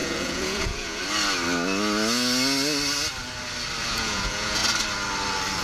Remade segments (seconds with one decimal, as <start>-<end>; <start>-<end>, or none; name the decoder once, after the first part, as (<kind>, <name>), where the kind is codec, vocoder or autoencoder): 0.0-1.0 (vocoder, Vocos); 3.9-4.6